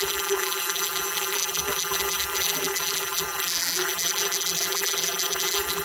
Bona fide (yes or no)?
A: no